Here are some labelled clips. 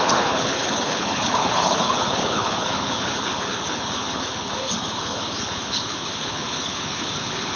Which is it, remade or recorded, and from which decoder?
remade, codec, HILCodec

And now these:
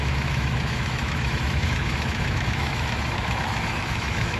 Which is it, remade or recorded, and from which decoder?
remade, autoencoder, DAC-VAE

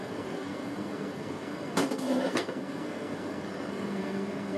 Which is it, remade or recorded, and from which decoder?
remade, codec, SNAC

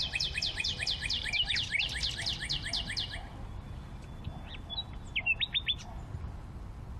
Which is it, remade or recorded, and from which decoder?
recorded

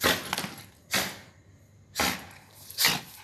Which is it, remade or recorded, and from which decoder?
recorded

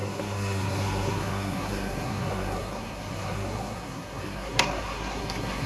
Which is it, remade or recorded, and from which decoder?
remade, codec, SNAC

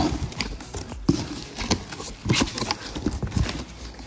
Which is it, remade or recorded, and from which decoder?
recorded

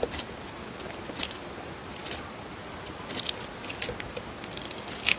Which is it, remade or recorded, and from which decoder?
recorded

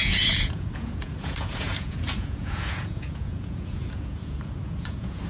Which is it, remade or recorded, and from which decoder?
remade, vocoder, Vocos